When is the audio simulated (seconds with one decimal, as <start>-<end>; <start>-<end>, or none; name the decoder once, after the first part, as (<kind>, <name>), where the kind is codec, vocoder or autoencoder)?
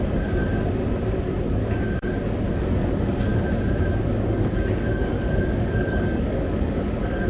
0.0-0.4 (codec, DAC); 1.2-1.6; 2.5-3.3; 4.1-7.3